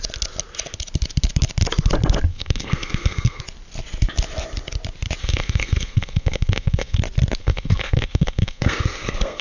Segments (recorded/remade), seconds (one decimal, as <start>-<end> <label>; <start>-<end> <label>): 0.0-2.3 recorded; 2.3-3.4 remade; 3.4-5.2 recorded; 5.2-7.0 remade; 7.0-7.4 recorded; 7.4-9.4 remade